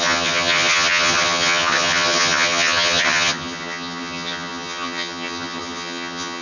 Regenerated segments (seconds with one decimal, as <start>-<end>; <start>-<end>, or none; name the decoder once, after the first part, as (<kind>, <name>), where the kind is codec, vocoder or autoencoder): 0.0-6.4 (vocoder, HiFi-GAN)